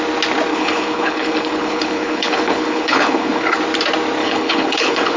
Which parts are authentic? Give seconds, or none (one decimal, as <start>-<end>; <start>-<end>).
0.0-0.5; 3.6-4.2

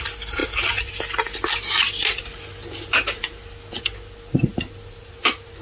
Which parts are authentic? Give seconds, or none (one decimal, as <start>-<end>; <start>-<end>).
0.0-5.6